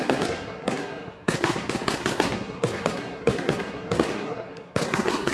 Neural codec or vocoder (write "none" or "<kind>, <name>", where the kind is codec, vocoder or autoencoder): codec, SNAC